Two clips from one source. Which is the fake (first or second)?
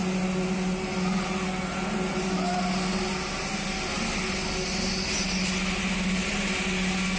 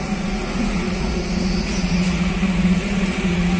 second